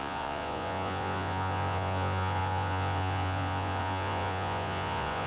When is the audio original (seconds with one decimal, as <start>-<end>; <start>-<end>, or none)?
none